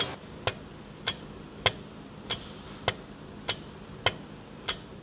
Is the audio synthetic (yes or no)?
no